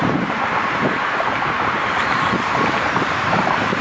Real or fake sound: fake